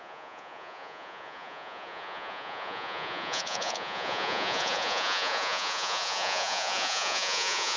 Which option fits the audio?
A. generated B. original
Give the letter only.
A